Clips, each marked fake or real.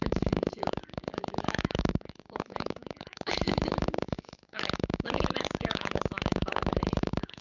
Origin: fake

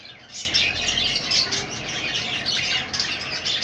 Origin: real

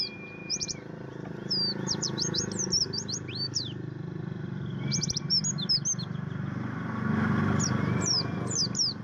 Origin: real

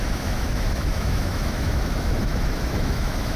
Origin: fake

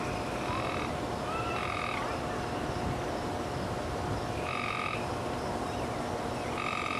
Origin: real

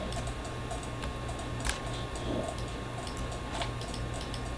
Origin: real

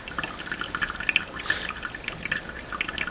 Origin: real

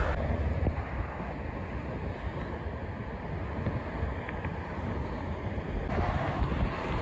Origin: real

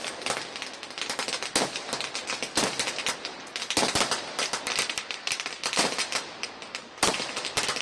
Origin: real